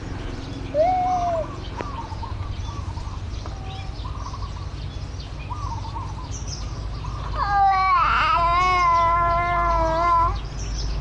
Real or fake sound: real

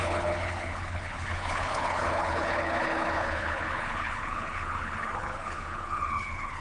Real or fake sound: fake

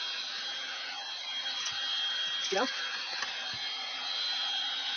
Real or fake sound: real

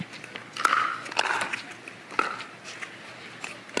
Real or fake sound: real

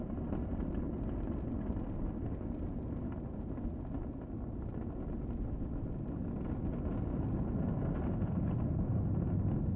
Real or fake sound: real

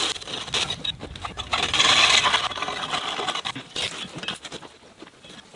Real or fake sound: real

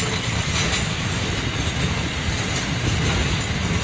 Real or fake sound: real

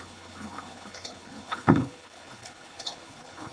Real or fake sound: fake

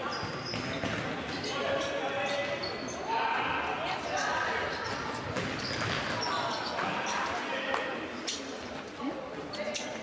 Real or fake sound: real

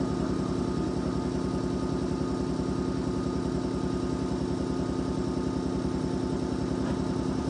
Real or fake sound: real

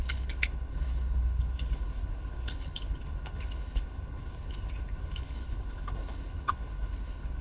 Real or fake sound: fake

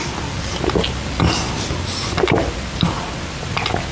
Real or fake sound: real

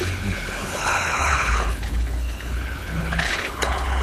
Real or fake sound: fake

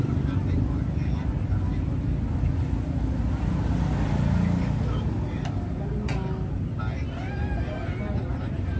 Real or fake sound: real